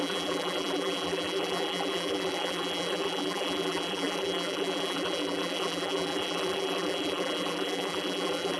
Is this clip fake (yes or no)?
yes